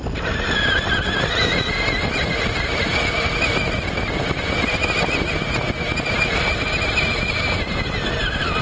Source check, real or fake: real